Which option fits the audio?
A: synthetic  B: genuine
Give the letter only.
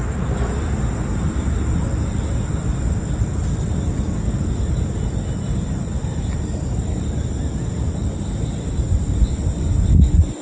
B